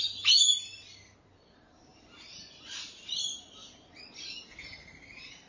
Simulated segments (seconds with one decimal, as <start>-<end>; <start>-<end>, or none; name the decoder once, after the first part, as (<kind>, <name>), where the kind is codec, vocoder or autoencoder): 1.9-3.1 (vocoder, BigVGAN v2)